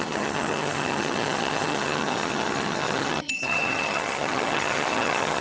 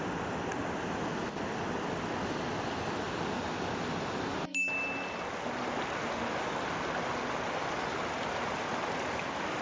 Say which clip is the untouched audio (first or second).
second